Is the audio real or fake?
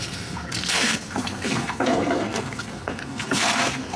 fake